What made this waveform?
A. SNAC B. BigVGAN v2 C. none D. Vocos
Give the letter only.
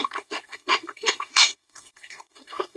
A